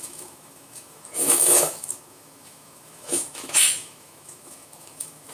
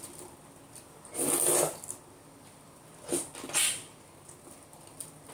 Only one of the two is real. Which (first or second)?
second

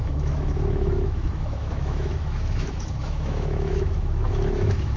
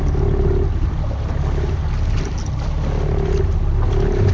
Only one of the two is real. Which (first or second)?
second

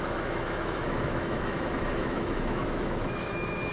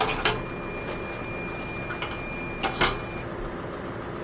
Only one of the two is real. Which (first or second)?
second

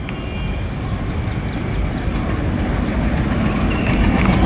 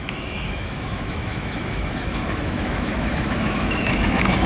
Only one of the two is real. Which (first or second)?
first